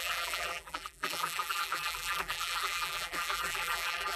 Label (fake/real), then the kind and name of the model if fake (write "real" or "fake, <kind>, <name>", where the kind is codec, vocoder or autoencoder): fake, vocoder, BigVGAN v2